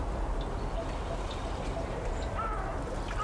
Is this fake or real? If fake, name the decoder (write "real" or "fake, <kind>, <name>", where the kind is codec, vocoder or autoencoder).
real